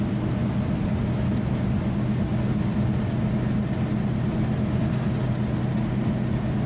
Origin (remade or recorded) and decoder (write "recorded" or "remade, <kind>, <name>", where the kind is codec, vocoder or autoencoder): recorded